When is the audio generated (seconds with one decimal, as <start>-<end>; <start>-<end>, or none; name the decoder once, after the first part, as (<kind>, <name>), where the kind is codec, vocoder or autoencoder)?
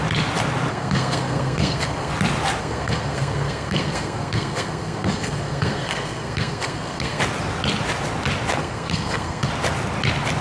0.7-2.1 (codec, SNAC); 2.6-7.2; 8.6-9.5